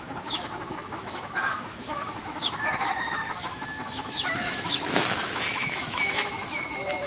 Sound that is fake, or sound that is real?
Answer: fake